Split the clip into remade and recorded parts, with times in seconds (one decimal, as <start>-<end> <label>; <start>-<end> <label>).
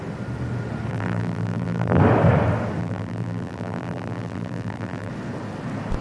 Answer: 0.0-0.9 recorded; 0.9-2.0 remade; 2.0-2.8 recorded; 2.8-5.1 remade; 5.1-6.0 recorded